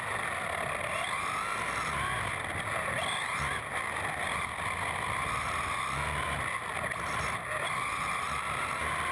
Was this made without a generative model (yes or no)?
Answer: yes